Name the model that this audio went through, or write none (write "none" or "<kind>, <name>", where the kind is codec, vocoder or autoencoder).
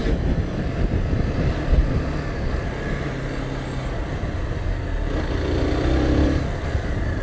none